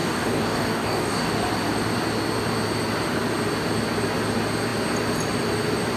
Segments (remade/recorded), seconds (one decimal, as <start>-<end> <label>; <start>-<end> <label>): 0.0-1.3 remade; 1.3-6.0 recorded